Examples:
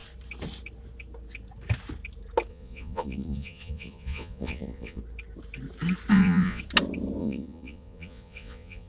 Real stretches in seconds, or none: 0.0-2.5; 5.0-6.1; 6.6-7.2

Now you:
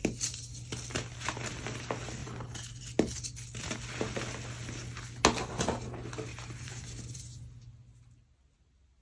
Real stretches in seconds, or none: 0.0-2.2; 2.8-6.3; 7.2-9.0

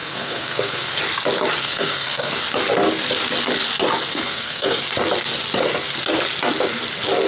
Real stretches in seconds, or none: 1.0-1.6; 2.3-4.1; 4.8-7.3

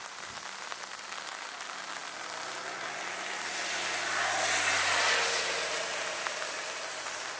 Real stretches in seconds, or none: 0.0-7.4

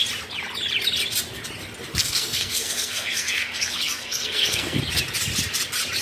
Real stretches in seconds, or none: 0.0-1.9; 4.8-6.0

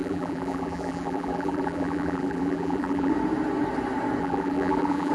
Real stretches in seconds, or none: 3.1-4.2

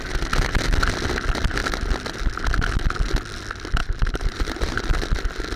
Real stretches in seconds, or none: 0.0-3.8; 5.0-5.6

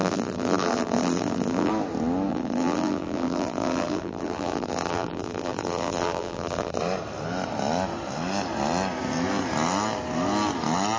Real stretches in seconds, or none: 1.7-2.3; 6.8-11.0